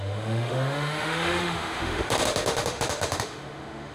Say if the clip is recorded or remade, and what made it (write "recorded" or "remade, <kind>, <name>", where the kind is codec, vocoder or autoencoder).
remade, autoencoder, DAC-VAE